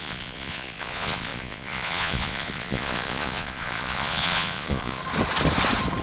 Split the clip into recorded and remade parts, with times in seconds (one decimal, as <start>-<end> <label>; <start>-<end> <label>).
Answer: 0.0-5.0 remade; 5.0-6.0 recorded

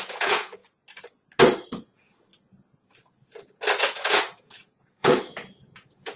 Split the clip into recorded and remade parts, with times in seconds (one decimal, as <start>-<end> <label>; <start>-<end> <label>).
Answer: 0.0-0.6 remade; 0.6-1.7 recorded; 1.7-2.3 remade; 2.3-3.8 recorded; 3.8-6.2 remade

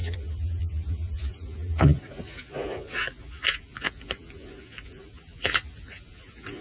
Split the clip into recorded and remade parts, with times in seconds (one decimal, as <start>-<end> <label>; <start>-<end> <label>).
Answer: 0.0-6.6 remade